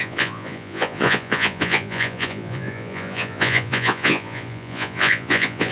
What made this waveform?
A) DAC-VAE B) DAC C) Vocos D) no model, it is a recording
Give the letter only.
C